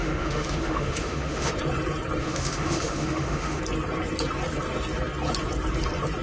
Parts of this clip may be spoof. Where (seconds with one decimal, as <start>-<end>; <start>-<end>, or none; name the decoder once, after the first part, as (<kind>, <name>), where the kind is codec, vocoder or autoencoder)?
0.0-1.5 (autoencoder, DAC-VAE); 2.2-3.6